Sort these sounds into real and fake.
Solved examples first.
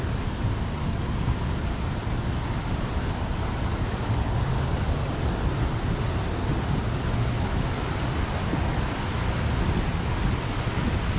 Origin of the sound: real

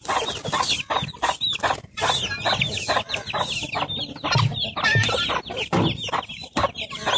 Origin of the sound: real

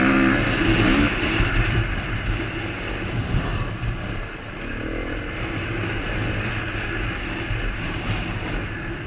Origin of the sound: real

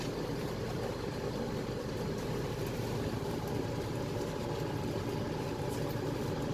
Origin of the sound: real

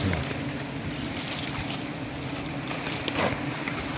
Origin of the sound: real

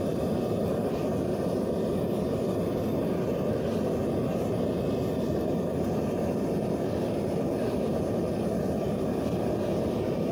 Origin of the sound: real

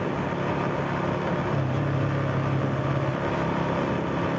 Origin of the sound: real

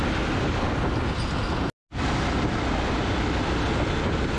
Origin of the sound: real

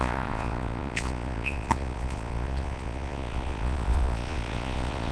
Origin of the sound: fake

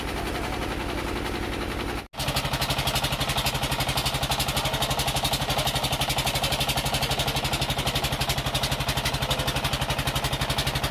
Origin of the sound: real